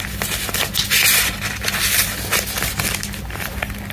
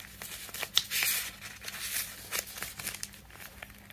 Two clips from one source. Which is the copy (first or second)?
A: first